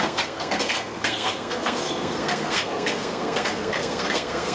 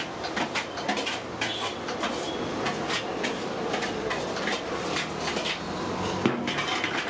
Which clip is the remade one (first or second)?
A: first